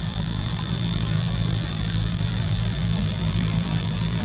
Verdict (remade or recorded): remade